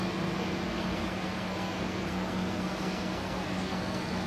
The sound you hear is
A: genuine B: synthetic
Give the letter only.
B